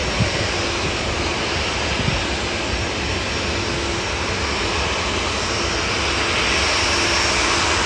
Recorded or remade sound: recorded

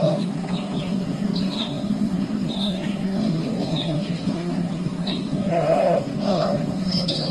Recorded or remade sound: remade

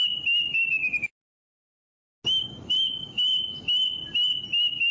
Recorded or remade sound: recorded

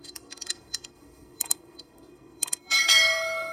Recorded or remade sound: remade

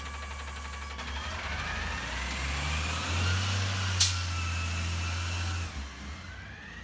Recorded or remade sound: recorded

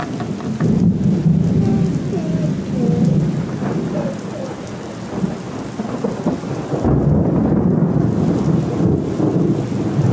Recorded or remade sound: recorded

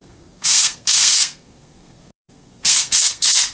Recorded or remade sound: remade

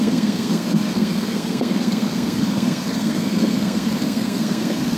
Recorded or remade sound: remade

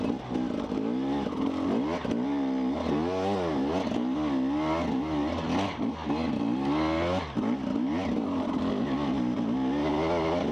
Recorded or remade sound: recorded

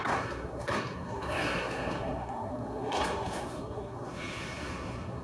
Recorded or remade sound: remade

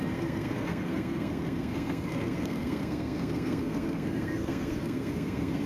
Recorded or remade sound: remade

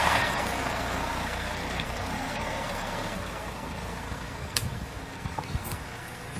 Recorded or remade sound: remade